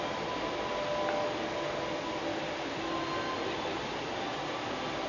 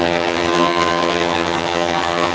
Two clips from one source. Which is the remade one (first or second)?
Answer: second